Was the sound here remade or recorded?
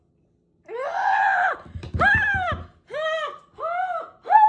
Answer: recorded